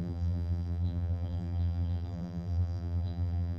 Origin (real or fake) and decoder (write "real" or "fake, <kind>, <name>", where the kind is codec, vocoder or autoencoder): fake, vocoder, BigVGAN v2